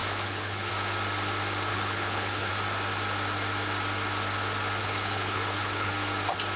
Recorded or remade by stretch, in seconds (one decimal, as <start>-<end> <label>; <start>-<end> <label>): 0.0-0.7 remade; 0.7-1.7 recorded; 1.7-2.5 remade; 2.5-4.8 recorded; 4.8-5.9 remade; 5.9-6.6 recorded